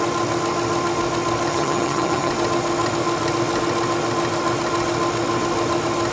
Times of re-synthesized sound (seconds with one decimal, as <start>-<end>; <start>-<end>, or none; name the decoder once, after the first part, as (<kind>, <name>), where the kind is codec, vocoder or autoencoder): 1.5-2.3 (vocoder, HiFi-GAN)